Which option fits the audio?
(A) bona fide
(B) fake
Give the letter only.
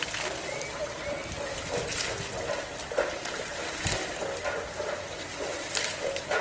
A